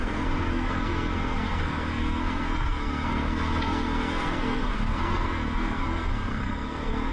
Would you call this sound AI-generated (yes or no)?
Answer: yes